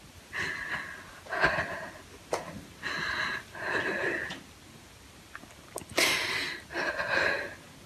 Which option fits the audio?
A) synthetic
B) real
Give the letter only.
B